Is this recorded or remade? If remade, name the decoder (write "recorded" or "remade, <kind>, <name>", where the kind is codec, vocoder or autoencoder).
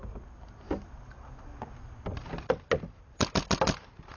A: recorded